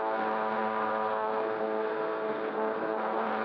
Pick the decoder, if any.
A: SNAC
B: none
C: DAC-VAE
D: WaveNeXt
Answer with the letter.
A